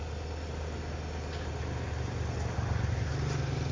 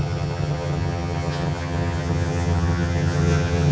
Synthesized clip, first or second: second